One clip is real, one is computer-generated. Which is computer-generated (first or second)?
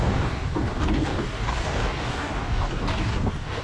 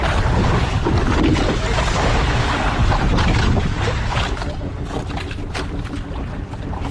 first